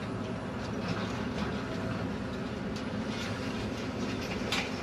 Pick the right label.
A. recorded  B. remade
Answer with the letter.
B